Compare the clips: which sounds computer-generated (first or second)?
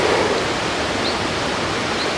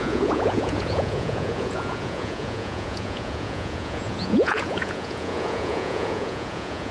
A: second